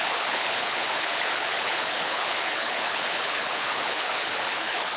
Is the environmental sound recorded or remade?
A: remade